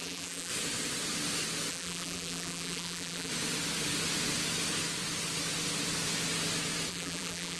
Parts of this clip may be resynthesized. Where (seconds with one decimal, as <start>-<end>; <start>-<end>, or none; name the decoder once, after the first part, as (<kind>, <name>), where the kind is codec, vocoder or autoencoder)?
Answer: 0.0-0.5 (vocoder, BigVGAN v2); 1.7-3.3; 6.9-7.6

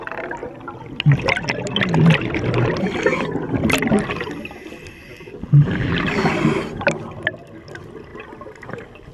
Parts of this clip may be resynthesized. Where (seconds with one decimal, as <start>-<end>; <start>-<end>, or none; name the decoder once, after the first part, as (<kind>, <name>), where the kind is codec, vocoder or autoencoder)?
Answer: 5.1-6.3 (vocoder, BigVGAN v2)

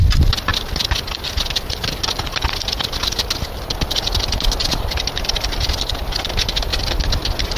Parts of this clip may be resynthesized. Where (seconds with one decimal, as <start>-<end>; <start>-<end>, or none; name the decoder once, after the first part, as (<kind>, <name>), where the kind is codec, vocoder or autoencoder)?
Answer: 0.0-0.5 (vocoder, BigVGAN v2); 5.0-6.7